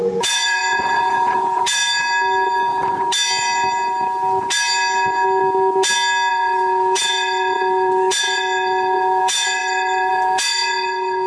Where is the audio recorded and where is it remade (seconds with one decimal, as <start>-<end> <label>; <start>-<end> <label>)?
0.0-1.8 remade; 1.8-6.3 recorded; 6.3-11.3 remade